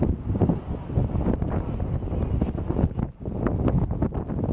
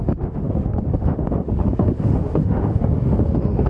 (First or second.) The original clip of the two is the first